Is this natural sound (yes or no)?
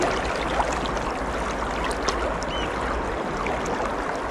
yes